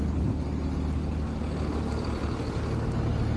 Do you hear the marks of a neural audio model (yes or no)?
no